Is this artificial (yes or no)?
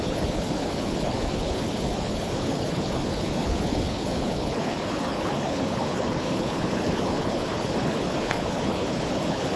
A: yes